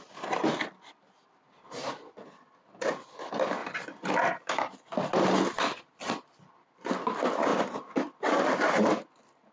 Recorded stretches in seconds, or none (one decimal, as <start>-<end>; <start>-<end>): 0.0-3.6; 4.5-9.5

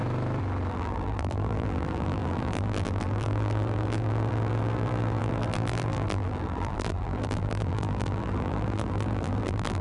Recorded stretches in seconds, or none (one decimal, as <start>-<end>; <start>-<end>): 0.0-0.7

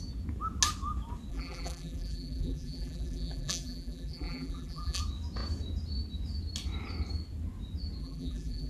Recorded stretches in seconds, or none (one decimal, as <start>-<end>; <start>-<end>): 0.0-1.3; 5.0-8.0

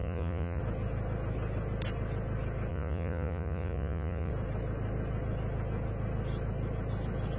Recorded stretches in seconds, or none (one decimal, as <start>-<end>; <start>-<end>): 0.6-2.7; 4.3-7.4

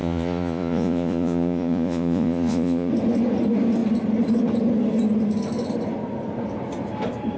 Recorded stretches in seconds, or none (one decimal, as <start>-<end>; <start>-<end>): 2.9-7.4

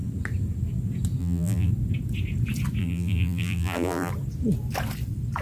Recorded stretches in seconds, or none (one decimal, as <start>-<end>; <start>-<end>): 0.0-1.2; 1.7-2.8; 4.1-5.4

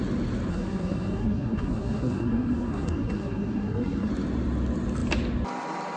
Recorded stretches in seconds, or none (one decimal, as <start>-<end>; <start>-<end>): 0.0-0.5; 4.1-6.0